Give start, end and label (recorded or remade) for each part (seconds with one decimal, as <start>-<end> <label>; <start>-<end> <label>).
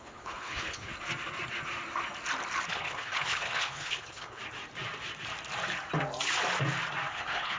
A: 0.0-0.9 remade; 0.9-2.7 recorded; 2.7-4.4 remade; 4.4-7.1 recorded; 7.1-7.6 remade